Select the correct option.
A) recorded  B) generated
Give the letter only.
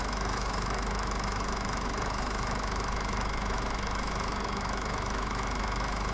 B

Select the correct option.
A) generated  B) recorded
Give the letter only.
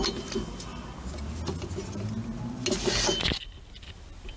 B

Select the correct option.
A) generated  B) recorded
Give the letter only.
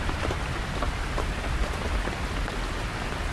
B